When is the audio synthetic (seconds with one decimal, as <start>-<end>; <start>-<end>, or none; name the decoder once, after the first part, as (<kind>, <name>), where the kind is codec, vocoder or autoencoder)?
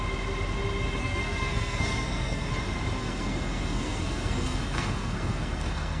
1.0-2.5 (codec, SNAC); 3.0-6.0